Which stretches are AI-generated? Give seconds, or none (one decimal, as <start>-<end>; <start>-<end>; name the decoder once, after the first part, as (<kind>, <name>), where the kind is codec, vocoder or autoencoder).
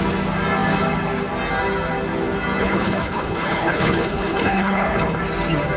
2.6-5.2 (codec, HILCodec)